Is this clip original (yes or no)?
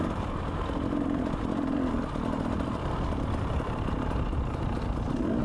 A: yes